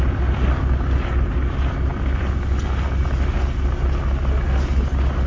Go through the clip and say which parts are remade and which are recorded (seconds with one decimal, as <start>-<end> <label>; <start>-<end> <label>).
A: 0.0-5.3 recorded